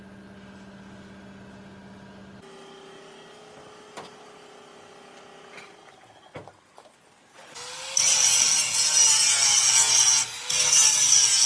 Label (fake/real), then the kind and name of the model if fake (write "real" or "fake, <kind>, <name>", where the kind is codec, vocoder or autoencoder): real